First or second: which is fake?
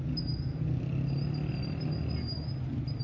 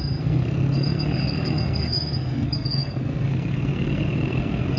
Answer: second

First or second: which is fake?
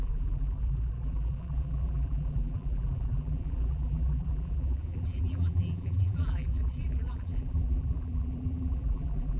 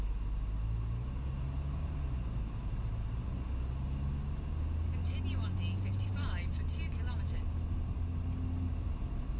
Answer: first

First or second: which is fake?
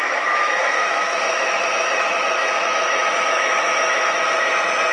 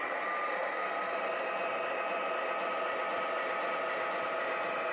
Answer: first